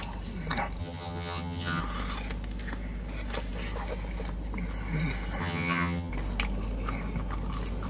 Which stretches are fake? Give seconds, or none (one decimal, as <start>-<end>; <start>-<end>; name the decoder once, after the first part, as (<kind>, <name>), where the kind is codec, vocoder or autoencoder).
0.8-1.8 (vocoder, HiFi-GAN); 5.4-6.1